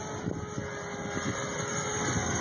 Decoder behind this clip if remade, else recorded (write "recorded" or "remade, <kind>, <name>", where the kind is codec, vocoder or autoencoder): recorded